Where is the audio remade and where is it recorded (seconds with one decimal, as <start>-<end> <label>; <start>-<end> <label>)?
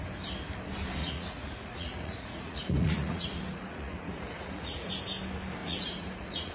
0.0-1.0 recorded; 1.0-4.9 remade; 4.9-5.6 recorded; 5.6-6.5 remade